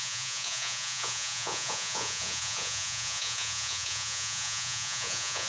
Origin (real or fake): fake